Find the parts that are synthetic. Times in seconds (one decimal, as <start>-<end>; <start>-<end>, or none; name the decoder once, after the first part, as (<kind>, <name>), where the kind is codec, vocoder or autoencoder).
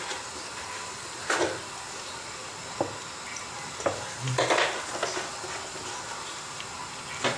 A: none